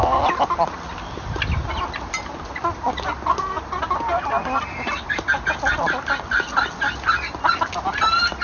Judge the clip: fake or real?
real